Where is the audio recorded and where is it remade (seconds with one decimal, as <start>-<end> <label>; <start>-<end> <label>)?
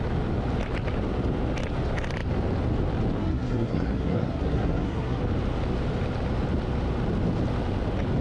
0.0-3.2 recorded; 3.2-5.2 remade; 5.2-8.2 recorded